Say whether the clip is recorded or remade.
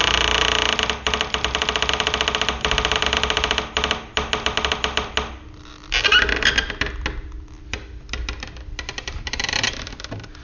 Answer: recorded